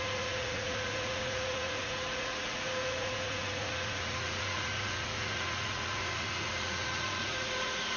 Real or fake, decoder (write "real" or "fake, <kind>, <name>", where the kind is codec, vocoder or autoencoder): fake, vocoder, Vocos